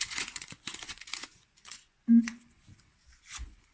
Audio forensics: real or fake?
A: fake